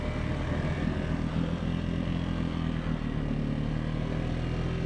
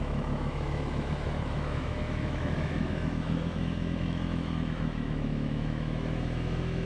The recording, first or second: first